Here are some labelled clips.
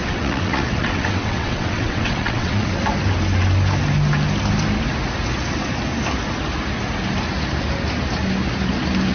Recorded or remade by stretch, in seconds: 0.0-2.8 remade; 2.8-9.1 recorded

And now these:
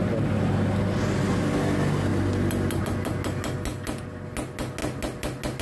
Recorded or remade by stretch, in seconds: 0.0-5.6 recorded

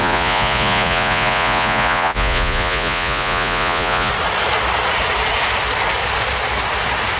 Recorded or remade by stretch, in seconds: 0.0-4.1 remade; 4.1-7.2 recorded

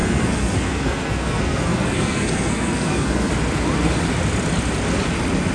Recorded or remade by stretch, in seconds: 0.0-3.3 remade; 3.3-5.5 recorded

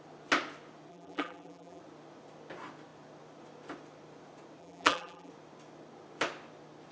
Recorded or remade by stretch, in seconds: 0.0-0.9 recorded; 0.9-1.8 remade; 1.8-4.6 recorded; 4.6-5.3 remade; 5.3-6.9 recorded

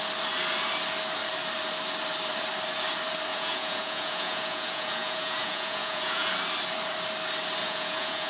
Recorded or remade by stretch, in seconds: 0.0-3.3 recorded; 3.3-6.3 remade; 6.3-7.6 recorded; 7.6-8.3 remade